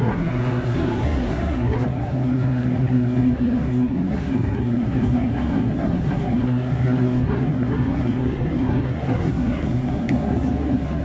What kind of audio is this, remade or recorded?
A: remade